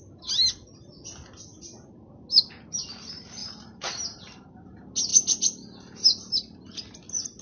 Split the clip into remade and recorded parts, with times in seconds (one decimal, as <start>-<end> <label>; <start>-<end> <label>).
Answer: 0.0-3.4 recorded; 3.4-4.5 remade; 4.5-7.4 recorded